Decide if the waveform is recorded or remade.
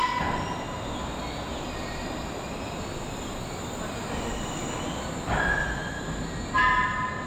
recorded